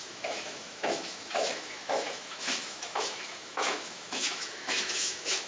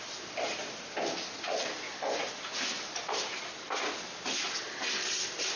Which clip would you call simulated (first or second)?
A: first